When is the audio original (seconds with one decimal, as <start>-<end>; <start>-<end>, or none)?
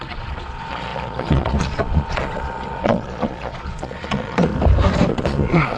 4.5-5.1